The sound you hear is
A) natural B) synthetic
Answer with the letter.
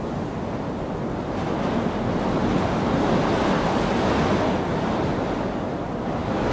A